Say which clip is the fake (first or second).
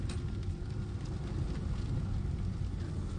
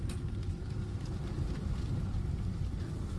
second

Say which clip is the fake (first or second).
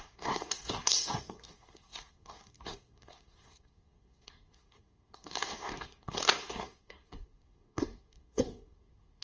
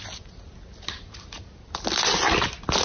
first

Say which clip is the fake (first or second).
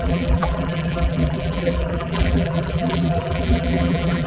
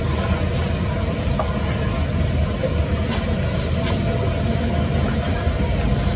first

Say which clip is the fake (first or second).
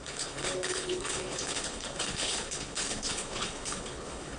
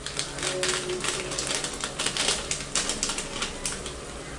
first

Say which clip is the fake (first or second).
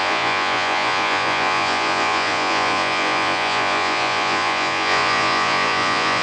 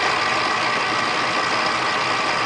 first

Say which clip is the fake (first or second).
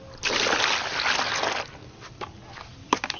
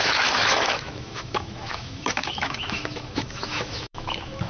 second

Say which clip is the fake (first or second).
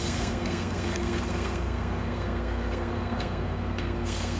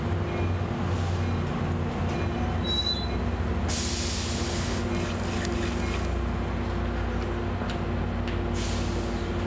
first